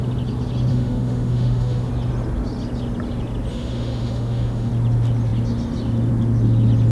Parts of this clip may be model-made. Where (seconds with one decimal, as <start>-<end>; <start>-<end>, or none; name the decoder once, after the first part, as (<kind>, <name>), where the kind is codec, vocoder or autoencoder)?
0.7-1.9 (autoencoder, DAC-VAE); 3.5-4.7